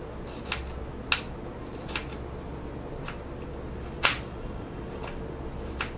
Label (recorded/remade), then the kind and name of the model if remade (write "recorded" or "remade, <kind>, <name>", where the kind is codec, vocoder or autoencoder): recorded